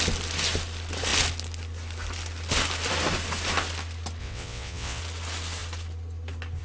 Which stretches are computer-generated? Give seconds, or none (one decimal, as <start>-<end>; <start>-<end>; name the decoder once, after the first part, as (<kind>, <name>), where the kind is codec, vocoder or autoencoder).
4.2-5.0 (vocoder, WaveNeXt)